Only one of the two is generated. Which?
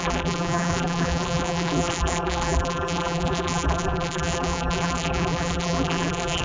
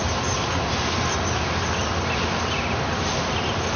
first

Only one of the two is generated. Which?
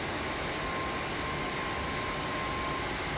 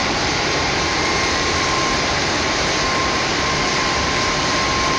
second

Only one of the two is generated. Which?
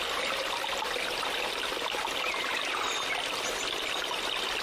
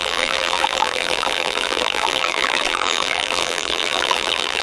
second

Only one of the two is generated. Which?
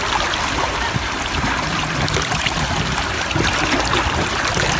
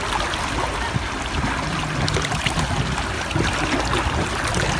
first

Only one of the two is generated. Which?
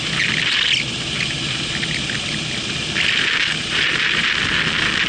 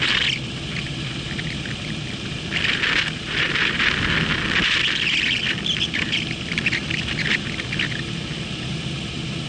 second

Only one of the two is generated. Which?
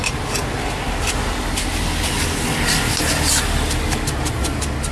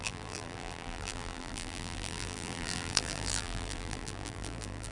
second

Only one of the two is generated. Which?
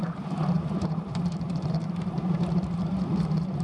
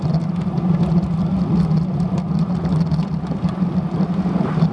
first